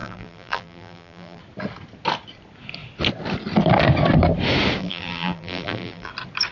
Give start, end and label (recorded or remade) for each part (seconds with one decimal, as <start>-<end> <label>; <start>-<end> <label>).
0.0-1.4 remade; 1.4-4.8 recorded; 4.8-6.1 remade; 6.1-6.5 recorded